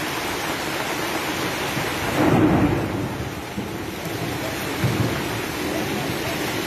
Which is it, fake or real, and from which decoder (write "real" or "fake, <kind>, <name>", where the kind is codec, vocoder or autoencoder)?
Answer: real